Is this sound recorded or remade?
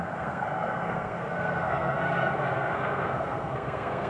remade